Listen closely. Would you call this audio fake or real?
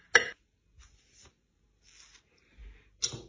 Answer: real